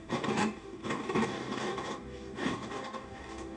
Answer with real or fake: fake